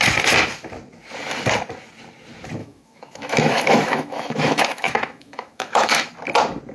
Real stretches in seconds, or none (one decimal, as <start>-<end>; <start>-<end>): 0.0-2.6; 6.1-6.7